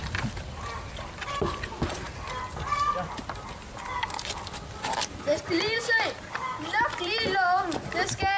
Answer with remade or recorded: recorded